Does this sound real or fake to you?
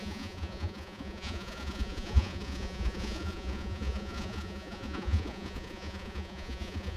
fake